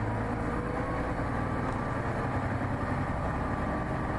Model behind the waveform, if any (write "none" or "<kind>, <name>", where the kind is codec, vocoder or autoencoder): none